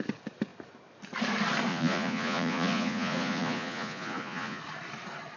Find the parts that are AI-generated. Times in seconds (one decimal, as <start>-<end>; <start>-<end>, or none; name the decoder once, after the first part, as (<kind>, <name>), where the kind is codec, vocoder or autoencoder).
1.7-4.6 (vocoder, Vocos)